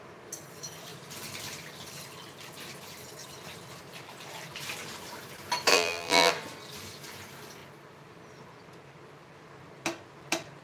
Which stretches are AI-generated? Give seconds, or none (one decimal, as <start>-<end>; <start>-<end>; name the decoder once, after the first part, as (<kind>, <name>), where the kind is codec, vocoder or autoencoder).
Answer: 5.7-6.3 (vocoder, BigVGAN v2)